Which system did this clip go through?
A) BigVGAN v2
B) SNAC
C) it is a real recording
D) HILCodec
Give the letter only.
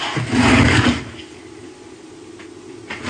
C